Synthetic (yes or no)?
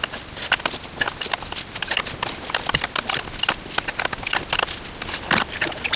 no